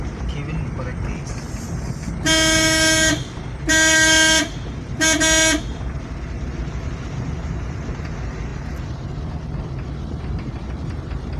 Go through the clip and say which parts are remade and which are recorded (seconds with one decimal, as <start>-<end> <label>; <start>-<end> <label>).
0.0-11.4 recorded